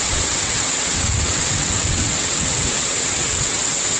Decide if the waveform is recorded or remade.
remade